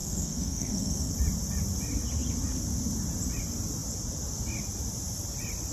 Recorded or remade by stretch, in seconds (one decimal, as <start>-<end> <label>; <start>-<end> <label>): 0.0-1.1 remade; 1.1-5.7 recorded